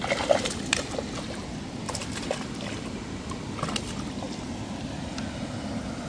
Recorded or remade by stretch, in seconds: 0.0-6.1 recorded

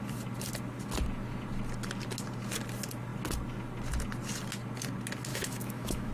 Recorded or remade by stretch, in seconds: 0.0-5.3 recorded; 5.3-6.1 remade

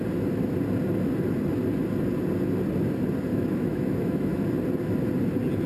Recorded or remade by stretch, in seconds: 0.0-3.3 recorded; 3.3-4.4 remade; 4.4-5.7 recorded

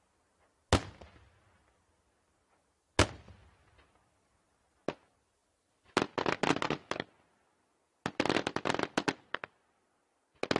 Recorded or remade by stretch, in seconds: 0.0-10.6 recorded

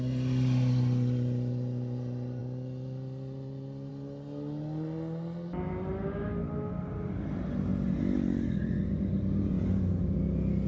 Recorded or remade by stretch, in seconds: 0.0-10.7 recorded